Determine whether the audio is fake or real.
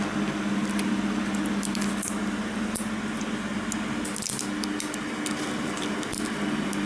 real